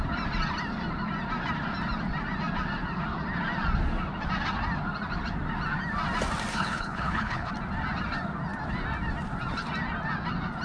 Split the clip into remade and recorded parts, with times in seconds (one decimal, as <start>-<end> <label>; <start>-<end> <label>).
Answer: 0.0-6.5 recorded; 6.5-7.5 remade; 7.5-10.6 recorded

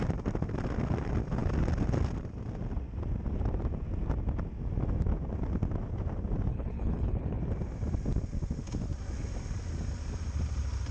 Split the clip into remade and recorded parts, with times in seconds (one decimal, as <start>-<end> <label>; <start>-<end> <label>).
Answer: 0.0-6.5 recorded; 6.5-7.4 remade; 7.4-10.9 recorded

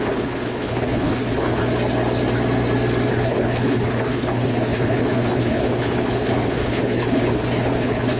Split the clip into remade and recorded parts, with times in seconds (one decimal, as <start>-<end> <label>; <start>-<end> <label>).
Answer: 0.0-1.6 remade; 1.6-3.1 recorded; 3.1-8.2 remade

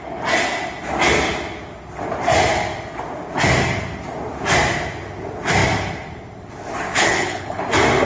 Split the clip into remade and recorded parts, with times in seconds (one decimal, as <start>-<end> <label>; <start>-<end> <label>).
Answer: 0.0-6.9 recorded; 6.9-7.6 remade; 7.6-8.0 recorded